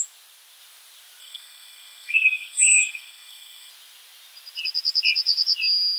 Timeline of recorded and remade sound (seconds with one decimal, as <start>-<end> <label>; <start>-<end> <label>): 0.0-1.2 recorded; 1.2-3.7 remade; 3.7-6.0 recorded